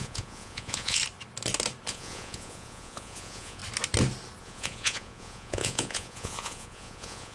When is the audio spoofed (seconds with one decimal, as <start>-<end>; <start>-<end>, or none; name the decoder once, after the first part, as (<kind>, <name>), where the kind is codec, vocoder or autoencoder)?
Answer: 0.0-1.0 (vocoder, Vocos); 1.9-3.6; 4.4-7.3